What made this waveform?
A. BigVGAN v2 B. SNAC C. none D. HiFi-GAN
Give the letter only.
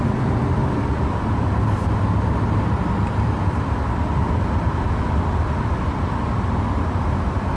A